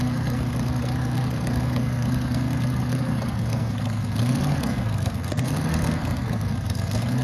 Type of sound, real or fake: fake